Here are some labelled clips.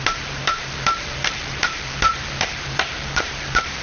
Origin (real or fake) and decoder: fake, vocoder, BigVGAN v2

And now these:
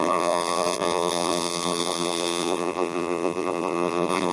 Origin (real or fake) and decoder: fake, vocoder, BigVGAN v2